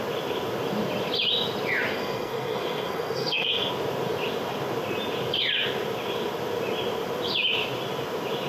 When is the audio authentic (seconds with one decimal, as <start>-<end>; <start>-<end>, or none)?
0.0-1.9; 3.7-8.5